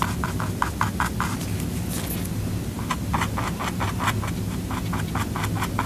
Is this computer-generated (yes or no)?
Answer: no